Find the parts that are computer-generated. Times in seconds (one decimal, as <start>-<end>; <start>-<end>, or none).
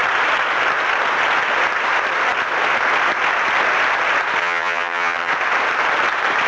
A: 4.4-5.3